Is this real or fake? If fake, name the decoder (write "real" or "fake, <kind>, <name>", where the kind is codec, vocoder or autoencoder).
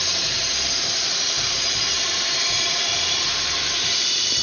fake, vocoder, BigVGAN v2